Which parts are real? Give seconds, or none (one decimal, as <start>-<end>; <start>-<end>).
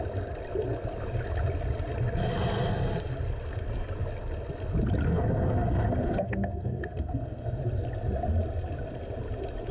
0.0-5.1; 7.6-9.7